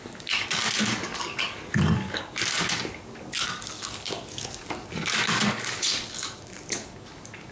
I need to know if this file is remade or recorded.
remade